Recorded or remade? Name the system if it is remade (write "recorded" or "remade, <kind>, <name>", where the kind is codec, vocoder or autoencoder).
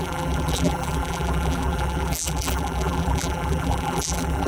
remade, vocoder, BigVGAN v2